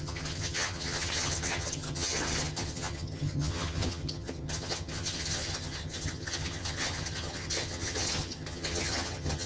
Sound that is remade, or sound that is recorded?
remade